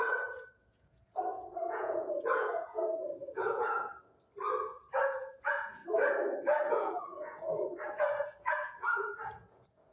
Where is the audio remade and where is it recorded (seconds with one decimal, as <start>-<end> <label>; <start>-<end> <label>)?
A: 0.0-3.9 remade; 3.9-4.6 recorded; 4.6-5.8 remade; 5.8-6.7 recorded; 6.7-9.9 remade